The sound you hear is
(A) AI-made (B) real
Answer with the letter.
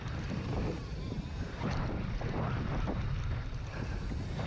B